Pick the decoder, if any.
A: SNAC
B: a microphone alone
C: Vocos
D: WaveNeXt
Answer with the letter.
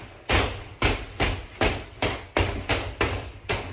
B